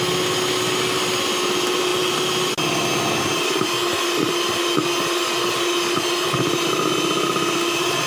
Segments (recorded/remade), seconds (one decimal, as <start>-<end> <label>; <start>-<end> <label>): 0.0-8.1 recorded